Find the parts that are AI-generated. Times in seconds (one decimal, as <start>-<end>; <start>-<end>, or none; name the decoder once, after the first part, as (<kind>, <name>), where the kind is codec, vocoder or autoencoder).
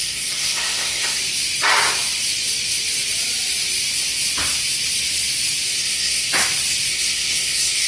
0.0-1.2 (codec, SNAC); 5.8-6.3; 6.9-7.9